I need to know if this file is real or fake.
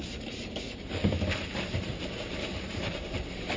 fake